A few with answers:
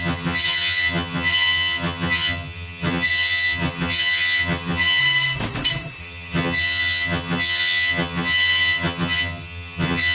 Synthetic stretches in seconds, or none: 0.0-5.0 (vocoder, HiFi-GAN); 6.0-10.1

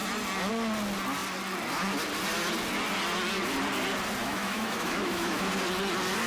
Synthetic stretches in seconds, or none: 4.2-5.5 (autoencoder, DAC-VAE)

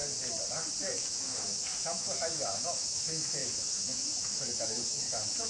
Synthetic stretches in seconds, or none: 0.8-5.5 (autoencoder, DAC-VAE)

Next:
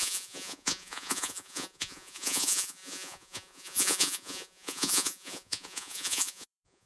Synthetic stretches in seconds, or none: 0.0-6.9 (vocoder, Vocos)

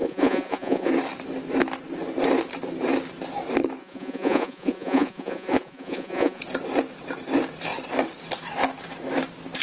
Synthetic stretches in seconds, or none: 0.0-0.9 (vocoder, Vocos); 3.8-6.4